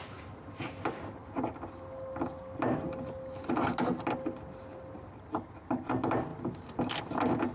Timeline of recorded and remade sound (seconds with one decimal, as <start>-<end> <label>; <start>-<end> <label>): 0.0-7.5 recorded